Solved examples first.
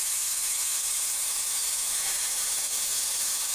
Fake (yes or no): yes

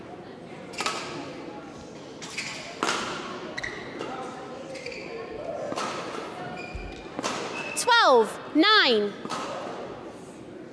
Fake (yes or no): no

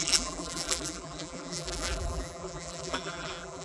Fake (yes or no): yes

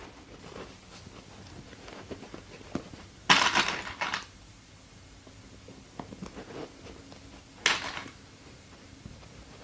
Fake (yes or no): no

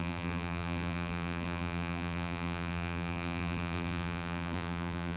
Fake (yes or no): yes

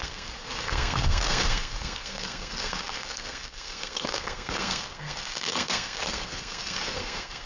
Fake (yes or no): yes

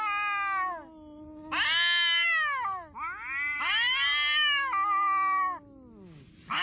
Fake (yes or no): no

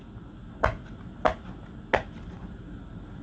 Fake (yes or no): no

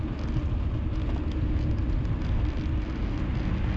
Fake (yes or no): no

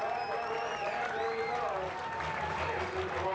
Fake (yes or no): no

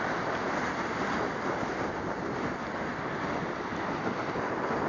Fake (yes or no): no